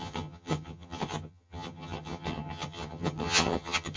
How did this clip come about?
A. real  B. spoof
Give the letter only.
B